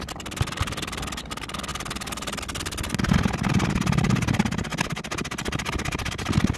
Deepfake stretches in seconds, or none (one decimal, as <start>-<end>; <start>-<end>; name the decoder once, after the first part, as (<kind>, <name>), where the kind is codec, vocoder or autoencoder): none